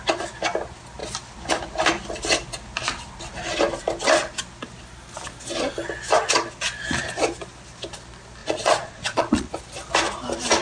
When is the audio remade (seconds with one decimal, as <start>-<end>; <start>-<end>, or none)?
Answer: 8.4-9.5